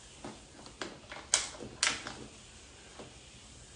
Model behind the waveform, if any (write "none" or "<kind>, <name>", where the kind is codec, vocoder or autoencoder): none